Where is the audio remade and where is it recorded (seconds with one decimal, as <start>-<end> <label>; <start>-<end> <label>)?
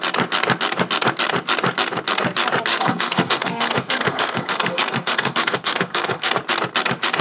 0.0-2.7 recorded; 2.7-6.3 remade; 6.3-7.2 recorded